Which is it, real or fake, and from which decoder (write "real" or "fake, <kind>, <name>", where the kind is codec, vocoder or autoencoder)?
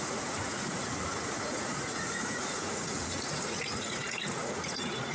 fake, vocoder, Vocos